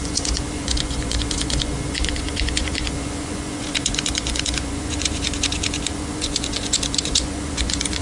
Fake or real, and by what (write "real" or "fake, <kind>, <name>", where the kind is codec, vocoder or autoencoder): fake, vocoder, Vocos